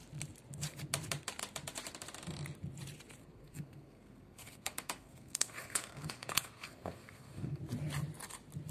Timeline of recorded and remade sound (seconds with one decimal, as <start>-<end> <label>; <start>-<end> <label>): 0.0-3.2 recorded; 3.2-7.6 remade; 7.6-8.7 recorded